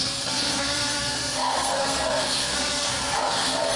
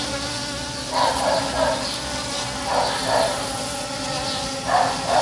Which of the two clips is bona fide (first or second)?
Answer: second